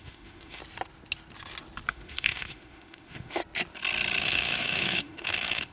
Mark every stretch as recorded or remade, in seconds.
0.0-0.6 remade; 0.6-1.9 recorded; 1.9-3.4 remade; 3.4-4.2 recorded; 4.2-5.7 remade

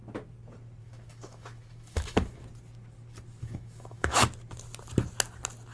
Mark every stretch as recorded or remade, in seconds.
0.0-0.8 recorded; 0.8-2.4 remade; 2.4-3.4 recorded; 3.4-4.2 remade; 4.2-5.7 recorded

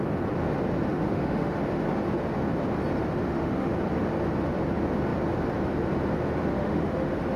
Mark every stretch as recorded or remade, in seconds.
0.0-0.9 recorded; 0.9-1.6 remade; 1.6-3.2 recorded; 3.2-3.7 remade; 3.7-6.5 recorded; 6.5-7.4 remade

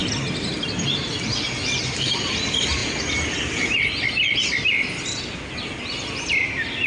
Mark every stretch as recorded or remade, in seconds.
0.0-6.9 recorded

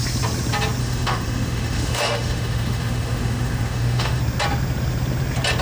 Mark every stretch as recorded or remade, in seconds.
0.0-0.8 recorded; 0.8-4.2 remade; 4.2-5.6 recorded

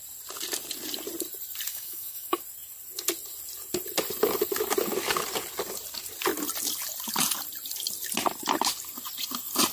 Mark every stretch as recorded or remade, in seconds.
0.0-1.7 recorded; 1.7-2.4 remade; 2.4-9.7 recorded